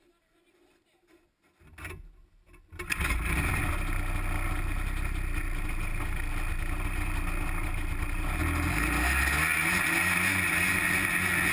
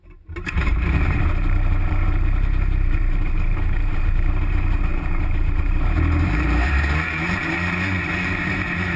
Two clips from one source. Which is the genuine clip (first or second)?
first